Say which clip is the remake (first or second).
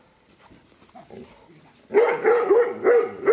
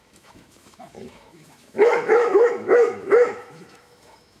second